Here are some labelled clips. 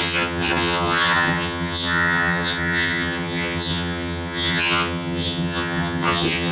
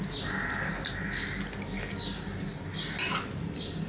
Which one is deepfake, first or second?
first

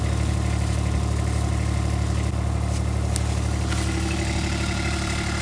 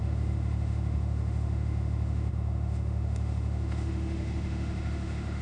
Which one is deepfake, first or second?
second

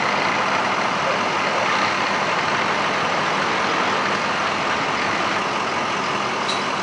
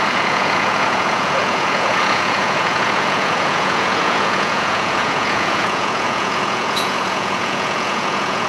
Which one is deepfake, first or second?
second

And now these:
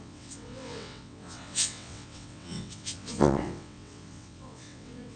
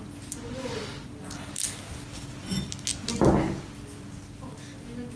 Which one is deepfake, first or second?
first